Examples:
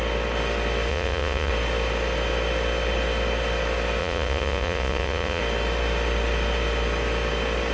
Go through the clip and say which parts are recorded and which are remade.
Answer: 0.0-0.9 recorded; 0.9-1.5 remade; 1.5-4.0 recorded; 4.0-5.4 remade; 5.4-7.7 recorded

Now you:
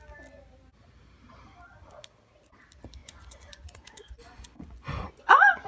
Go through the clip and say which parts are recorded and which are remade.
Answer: 0.0-3.0 recorded; 3.0-5.7 remade

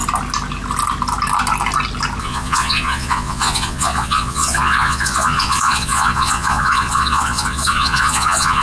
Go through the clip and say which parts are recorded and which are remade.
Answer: 0.0-2.2 recorded; 2.2-8.6 remade

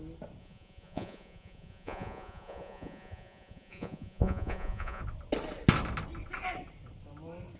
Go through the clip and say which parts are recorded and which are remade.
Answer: 0.0-0.4 recorded; 0.4-5.0 remade; 5.0-7.6 recorded

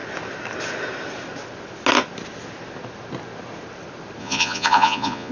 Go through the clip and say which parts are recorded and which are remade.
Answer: 0.0-4.2 recorded; 4.2-5.3 remade

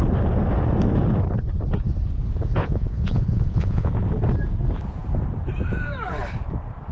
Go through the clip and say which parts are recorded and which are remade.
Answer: 0.0-2.6 recorded; 2.6-3.9 remade; 3.9-6.9 recorded

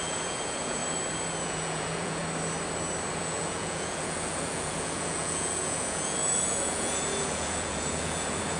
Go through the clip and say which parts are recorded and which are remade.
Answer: 0.0-0.8 remade; 0.8-1.4 recorded; 1.4-2.2 remade; 2.2-3.1 recorded; 3.1-8.6 remade